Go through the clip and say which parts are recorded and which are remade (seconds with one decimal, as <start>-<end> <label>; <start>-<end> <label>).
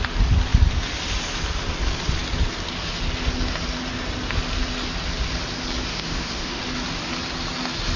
0.0-5.9 recorded; 5.9-6.6 remade; 6.6-8.0 recorded